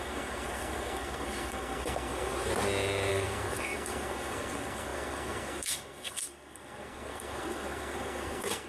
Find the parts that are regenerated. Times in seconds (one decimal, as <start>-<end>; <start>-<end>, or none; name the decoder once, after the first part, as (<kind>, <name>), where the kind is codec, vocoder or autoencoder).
0.0-2.5 (codec, SNAC); 3.1-8.7